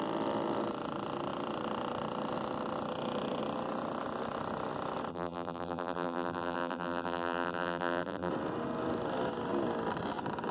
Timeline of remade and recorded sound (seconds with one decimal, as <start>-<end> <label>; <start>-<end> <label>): 0.0-5.1 recorded; 5.1-8.3 remade; 8.3-10.5 recorded